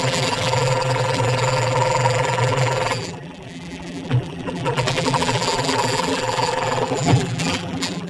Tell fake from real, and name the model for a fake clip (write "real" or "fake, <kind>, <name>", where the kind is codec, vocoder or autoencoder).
fake, vocoder, BigVGAN v2